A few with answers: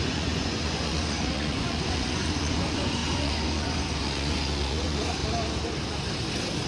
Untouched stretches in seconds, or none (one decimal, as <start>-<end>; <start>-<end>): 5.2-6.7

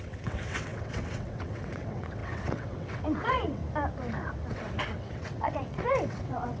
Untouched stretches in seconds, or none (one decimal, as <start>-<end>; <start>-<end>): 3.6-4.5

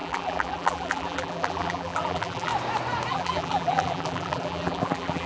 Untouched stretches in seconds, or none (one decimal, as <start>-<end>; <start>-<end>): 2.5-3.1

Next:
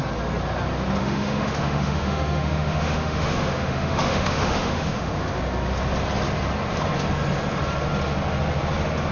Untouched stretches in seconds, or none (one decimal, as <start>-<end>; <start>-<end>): 0.0-1.0; 5.4-9.1

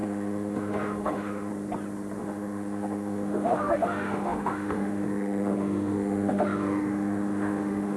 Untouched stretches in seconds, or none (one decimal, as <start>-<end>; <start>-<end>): 1.5-2.2

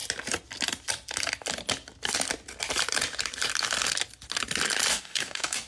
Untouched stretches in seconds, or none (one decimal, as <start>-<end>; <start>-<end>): 0.0-4.9